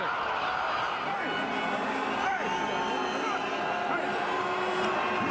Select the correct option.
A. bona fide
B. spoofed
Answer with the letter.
A